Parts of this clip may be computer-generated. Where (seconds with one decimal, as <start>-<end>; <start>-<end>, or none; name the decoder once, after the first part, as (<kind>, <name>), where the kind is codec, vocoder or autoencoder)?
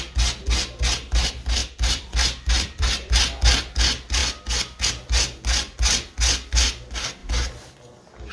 1.6-3.1 (vocoder, BigVGAN v2)